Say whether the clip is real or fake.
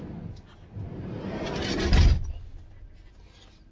real